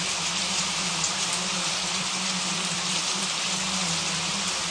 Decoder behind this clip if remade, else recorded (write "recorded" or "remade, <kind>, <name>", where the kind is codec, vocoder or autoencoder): recorded